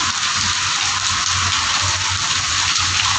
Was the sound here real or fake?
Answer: fake